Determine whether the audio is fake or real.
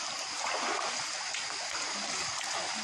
real